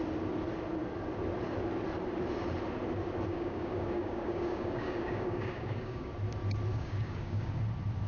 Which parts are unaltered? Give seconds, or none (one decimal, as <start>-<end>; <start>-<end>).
0.0-3.3; 6.1-6.7; 7.5-8.1